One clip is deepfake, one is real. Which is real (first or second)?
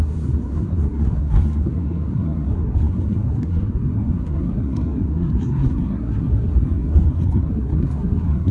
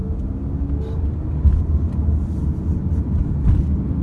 second